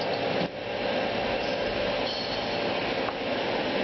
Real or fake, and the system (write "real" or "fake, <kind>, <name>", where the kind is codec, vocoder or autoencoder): real